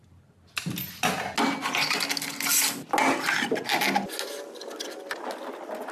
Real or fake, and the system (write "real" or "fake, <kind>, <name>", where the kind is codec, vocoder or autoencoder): real